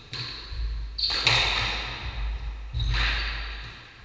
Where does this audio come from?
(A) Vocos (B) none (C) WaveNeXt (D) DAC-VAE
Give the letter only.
B